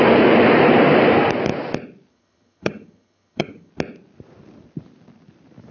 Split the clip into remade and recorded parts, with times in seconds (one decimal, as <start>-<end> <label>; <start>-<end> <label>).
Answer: 0.0-2.1 recorded; 2.1-3.7 remade; 3.7-5.7 recorded